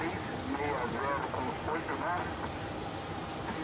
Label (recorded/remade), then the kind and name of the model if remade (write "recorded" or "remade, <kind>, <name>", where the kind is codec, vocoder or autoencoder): recorded